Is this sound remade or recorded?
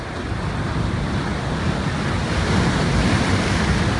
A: recorded